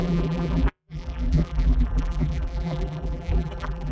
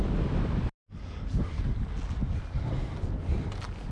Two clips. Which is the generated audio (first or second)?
first